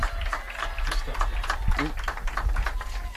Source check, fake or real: real